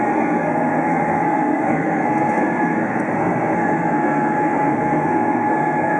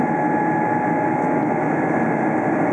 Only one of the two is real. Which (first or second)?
second